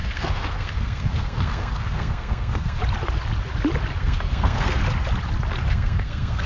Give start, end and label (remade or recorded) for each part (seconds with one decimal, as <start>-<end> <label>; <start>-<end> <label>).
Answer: 0.0-2.8 remade; 2.8-4.0 recorded; 4.0-4.8 remade; 4.8-5.7 recorded; 5.7-6.5 remade